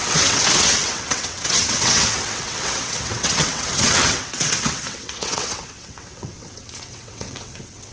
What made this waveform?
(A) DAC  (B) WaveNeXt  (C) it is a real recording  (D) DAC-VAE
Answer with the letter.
B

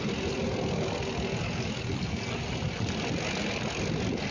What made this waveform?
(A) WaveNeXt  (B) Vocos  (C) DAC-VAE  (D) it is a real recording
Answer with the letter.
D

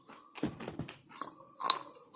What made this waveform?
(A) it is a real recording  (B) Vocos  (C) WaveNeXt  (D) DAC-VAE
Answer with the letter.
A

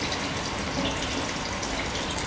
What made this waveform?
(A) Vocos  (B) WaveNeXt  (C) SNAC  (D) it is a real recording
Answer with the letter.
D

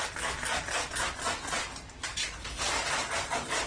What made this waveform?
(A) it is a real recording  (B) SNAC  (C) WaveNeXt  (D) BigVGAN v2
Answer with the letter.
A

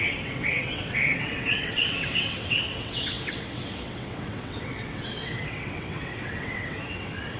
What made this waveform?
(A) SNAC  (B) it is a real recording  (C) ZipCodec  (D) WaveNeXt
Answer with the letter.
D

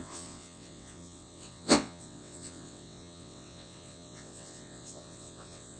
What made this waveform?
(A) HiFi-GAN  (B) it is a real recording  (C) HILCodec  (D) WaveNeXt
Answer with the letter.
D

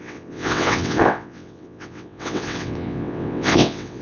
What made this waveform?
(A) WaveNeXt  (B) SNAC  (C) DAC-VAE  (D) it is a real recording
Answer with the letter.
A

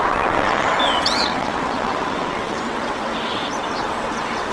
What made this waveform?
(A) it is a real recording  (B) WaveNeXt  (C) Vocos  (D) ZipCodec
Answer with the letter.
B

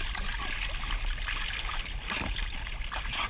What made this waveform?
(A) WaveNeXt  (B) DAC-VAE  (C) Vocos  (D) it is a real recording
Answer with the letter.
D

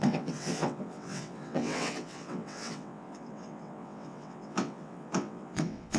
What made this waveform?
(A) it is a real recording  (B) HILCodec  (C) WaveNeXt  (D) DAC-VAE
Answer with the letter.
C